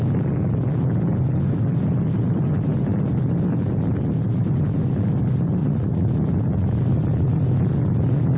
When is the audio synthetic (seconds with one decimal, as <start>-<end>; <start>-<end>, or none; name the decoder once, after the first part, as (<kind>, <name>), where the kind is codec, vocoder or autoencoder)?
5.6-6.1 (vocoder, Vocos)